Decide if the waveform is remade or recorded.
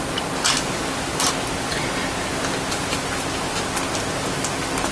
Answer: recorded